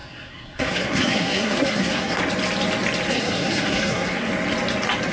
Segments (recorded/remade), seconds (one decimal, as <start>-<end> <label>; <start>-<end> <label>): 0.0-2.2 remade; 2.2-3.1 recorded; 3.1-4.3 remade; 4.3-5.1 recorded